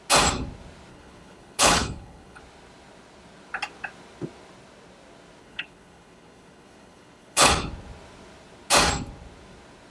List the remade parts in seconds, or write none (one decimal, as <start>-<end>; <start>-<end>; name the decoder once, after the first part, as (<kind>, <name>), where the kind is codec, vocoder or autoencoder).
0.9-2.4 (codec, HILCodec); 5.4-7.5